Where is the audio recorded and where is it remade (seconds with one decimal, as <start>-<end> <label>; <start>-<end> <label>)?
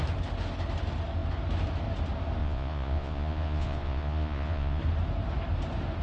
0.0-2.4 recorded; 2.4-4.8 remade; 4.8-6.0 recorded